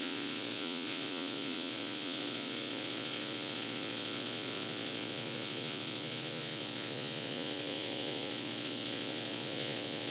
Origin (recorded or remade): remade